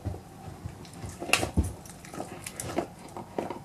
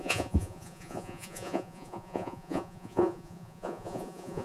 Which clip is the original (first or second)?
first